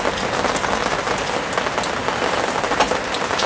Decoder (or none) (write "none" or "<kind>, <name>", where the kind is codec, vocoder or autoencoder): none